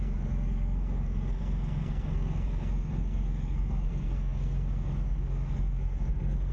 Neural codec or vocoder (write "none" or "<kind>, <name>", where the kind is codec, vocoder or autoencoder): codec, SNAC